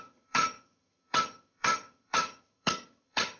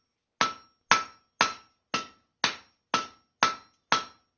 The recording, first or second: second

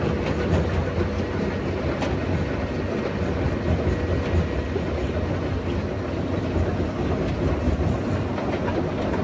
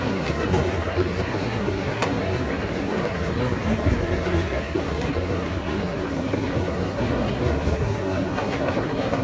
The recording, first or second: first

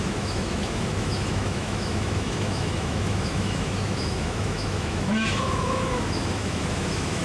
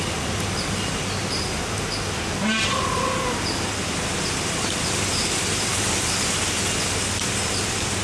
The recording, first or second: second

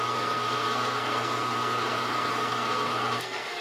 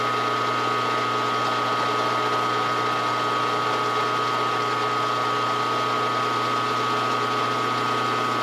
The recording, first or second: second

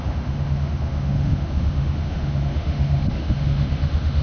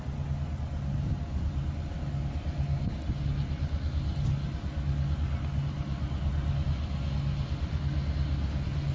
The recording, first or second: second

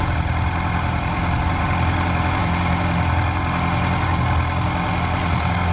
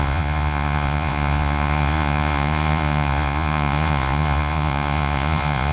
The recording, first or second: first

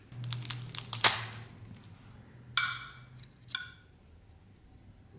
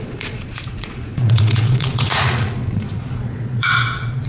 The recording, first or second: first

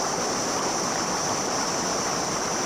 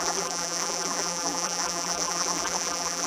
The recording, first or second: first